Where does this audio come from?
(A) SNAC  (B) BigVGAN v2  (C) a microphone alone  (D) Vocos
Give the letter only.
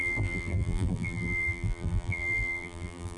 B